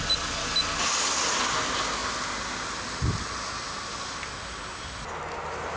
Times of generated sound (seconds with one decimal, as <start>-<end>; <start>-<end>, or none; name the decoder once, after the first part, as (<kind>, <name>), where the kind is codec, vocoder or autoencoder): none